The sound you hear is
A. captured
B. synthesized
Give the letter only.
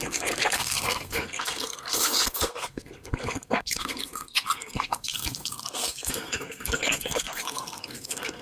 B